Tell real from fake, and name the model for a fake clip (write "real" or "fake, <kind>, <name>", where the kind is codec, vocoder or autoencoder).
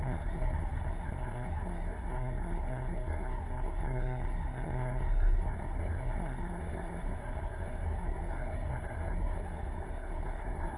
fake, codec, SNAC